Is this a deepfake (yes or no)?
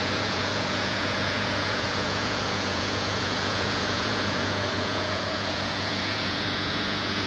yes